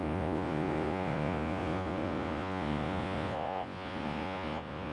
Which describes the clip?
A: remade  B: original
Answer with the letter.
A